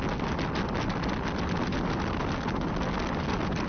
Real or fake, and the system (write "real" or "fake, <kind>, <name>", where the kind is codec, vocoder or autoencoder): real